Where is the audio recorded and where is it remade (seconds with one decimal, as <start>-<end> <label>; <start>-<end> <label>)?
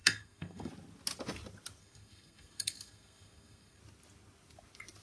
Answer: 0.0-0.7 remade; 0.7-1.8 recorded; 1.8-3.8 remade; 3.8-5.0 recorded